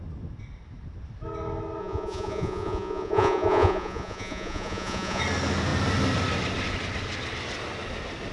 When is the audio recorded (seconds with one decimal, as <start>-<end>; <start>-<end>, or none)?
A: 0.0-1.8; 5.2-8.3